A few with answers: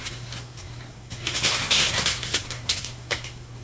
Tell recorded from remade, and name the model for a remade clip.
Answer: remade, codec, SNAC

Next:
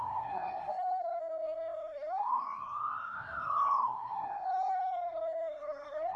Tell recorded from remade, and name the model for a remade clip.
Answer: remade, codec, SNAC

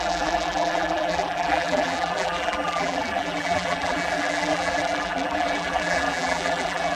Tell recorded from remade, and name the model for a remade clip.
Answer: remade, vocoder, BigVGAN v2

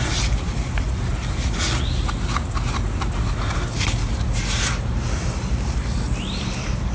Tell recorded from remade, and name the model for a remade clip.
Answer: recorded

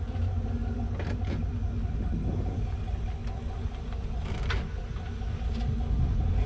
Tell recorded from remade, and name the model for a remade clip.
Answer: recorded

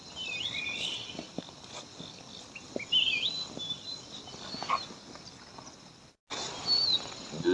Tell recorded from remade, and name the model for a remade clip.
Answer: recorded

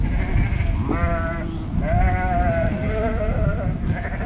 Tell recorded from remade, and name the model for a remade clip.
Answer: recorded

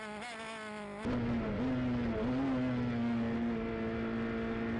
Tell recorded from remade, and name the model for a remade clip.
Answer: recorded